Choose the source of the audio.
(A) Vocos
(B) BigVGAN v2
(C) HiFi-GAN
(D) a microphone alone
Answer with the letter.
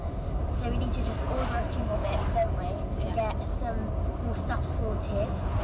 D